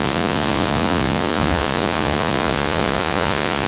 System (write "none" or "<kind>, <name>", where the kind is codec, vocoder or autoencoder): vocoder, Vocos